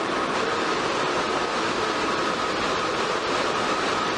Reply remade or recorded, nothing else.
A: recorded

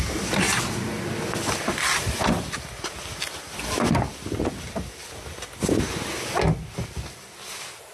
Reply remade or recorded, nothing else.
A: recorded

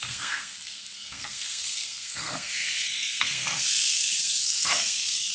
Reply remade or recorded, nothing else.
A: remade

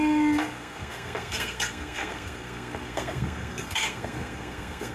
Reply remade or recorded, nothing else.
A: remade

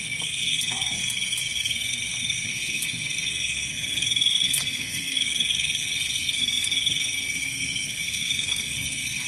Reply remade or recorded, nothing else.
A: remade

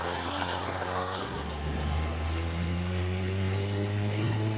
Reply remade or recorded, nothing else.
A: remade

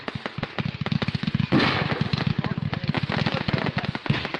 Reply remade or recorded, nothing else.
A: recorded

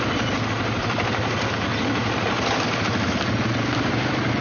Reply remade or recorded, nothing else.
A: recorded